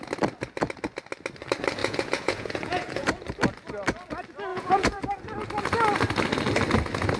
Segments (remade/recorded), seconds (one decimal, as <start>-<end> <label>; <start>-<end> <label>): 0.0-1.8 recorded; 1.8-3.1 remade; 3.1-4.5 recorded; 4.5-5.0 remade; 5.0-7.2 recorded